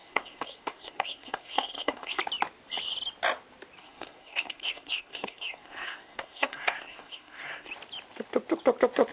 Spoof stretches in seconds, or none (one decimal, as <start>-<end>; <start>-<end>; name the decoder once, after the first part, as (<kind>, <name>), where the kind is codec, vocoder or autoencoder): 0.0-2.2 (codec, SNAC); 3.8-7.7